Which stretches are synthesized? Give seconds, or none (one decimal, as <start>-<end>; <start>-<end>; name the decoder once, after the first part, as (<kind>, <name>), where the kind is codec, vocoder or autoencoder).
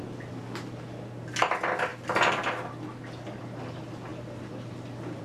none